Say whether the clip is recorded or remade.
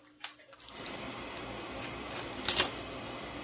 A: recorded